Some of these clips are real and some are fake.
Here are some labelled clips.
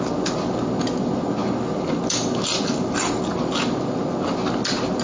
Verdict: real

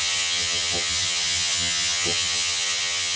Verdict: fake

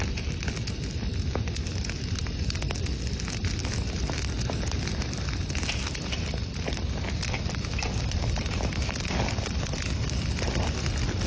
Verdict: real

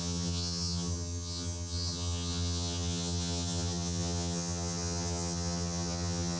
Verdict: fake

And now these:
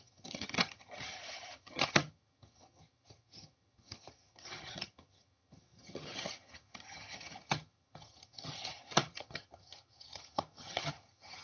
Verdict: fake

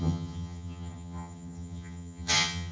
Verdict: fake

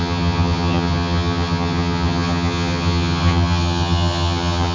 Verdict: fake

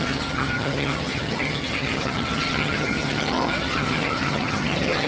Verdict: fake